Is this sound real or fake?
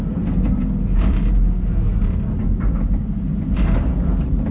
real